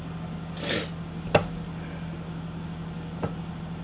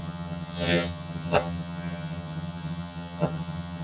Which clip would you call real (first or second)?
first